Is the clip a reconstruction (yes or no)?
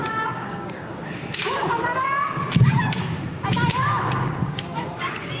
yes